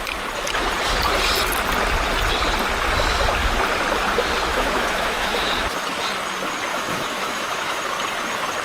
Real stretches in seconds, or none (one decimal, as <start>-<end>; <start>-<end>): 0.0-4.5; 5.5-6.7; 7.8-8.6